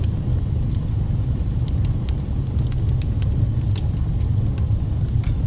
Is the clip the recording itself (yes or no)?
yes